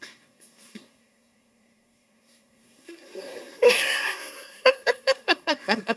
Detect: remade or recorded remade